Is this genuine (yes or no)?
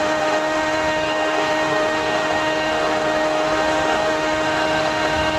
no